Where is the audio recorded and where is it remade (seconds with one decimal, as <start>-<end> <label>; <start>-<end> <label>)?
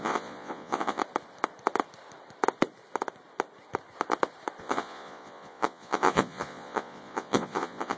0.0-1.0 remade; 1.0-4.6 recorded; 4.6-8.0 remade